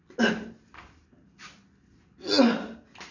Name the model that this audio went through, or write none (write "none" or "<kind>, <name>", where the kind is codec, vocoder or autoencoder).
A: none